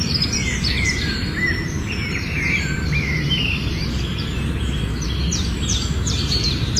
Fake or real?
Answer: fake